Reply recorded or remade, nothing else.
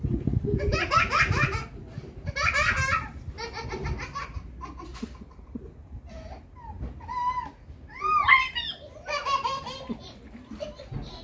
recorded